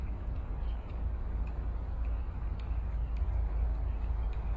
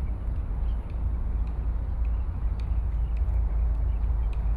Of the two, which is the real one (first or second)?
second